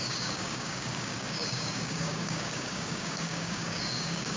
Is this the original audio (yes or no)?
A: no